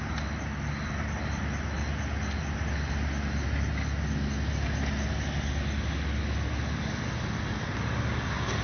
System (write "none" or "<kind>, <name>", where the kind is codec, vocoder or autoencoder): none